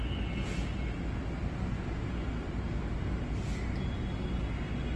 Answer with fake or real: real